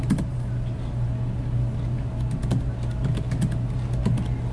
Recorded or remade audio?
recorded